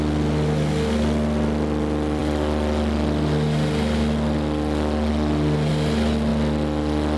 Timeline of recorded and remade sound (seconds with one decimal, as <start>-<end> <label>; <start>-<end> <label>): 0.0-7.2 recorded